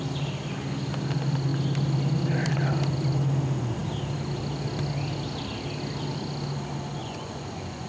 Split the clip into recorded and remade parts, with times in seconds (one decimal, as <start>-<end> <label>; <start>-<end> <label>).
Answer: 0.0-7.0 recorded; 7.0-7.9 remade